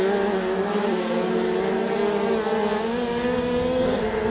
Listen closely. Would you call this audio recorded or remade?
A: recorded